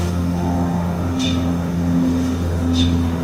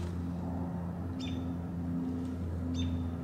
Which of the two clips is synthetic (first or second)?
first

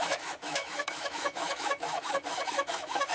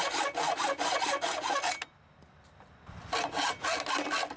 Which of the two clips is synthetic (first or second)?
first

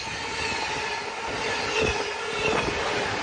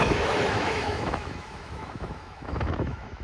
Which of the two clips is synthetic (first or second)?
second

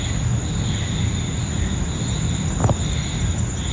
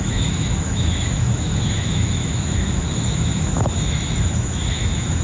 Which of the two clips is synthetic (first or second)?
second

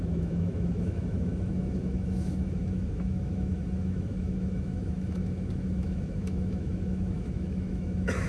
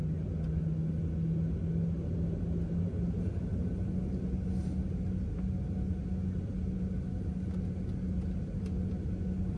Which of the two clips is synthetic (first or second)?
first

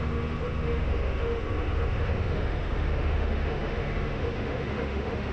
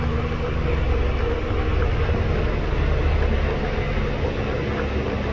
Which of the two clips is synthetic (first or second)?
first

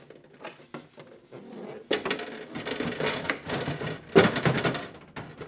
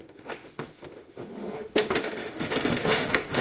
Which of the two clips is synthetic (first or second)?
second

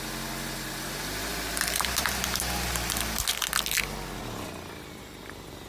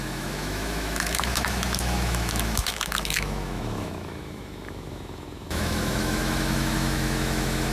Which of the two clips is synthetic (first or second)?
second